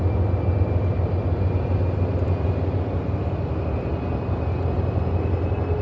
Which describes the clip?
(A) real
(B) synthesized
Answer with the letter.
A